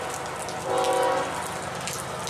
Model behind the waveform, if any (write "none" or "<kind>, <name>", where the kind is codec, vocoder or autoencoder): none